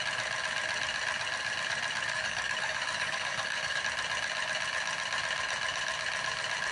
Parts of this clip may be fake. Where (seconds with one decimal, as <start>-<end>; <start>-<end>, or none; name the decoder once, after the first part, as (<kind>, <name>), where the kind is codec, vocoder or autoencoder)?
2.1-3.8 (codec, DAC)